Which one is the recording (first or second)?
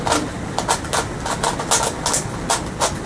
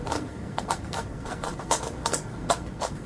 first